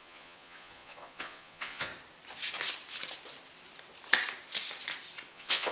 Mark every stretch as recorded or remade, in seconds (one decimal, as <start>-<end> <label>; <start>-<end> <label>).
0.0-1.9 remade; 1.9-5.3 recorded; 5.3-5.7 remade